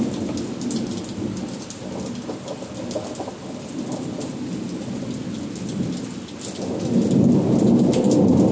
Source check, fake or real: real